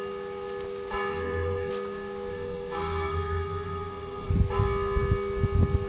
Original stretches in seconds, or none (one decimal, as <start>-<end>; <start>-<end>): 0.0-1.1; 1.7-2.3; 4.3-5.9